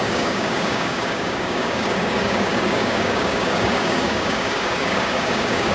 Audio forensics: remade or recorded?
remade